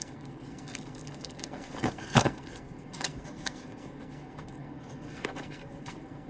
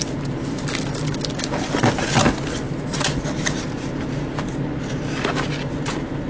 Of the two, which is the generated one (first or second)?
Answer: first